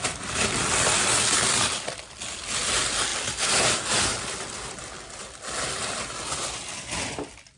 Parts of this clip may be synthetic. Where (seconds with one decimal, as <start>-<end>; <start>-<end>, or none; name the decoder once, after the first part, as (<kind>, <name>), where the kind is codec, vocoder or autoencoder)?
none